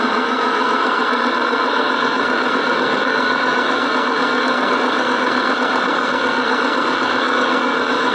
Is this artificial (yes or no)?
yes